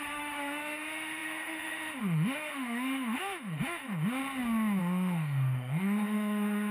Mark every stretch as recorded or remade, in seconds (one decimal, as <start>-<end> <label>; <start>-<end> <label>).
0.0-4.2 remade; 4.2-4.8 recorded; 4.8-6.7 remade